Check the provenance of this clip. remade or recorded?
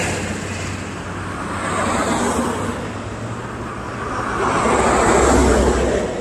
recorded